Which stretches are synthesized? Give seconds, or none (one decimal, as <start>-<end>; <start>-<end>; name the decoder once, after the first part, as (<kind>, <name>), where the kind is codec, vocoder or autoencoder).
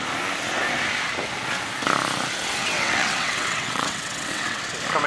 2.6-4.6 (vocoder, WaveNeXt)